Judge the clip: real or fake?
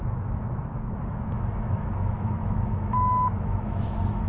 fake